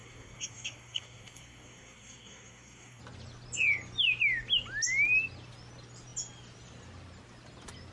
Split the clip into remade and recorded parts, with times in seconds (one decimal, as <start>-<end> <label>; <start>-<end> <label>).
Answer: 0.0-3.0 remade; 3.0-7.9 recorded